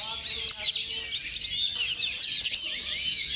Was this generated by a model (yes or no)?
no